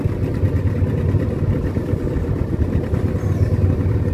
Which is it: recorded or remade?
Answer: recorded